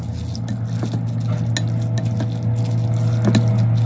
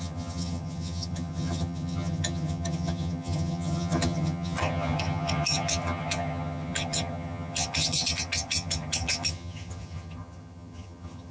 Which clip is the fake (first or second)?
second